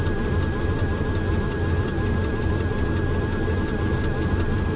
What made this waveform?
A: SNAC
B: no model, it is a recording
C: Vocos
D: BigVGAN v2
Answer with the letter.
B